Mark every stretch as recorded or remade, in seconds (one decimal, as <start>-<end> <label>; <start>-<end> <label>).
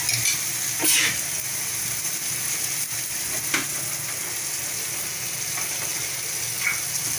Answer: 0.0-7.2 recorded